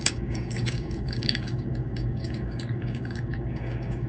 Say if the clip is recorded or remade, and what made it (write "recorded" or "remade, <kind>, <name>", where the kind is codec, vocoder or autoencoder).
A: remade, codec, DAC